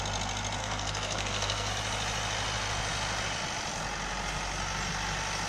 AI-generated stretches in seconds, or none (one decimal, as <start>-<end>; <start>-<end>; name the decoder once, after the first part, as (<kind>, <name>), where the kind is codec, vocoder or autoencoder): 0.6-1.7 (codec, SNAC)